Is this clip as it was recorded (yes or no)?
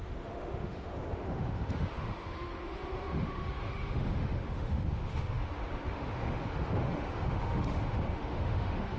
no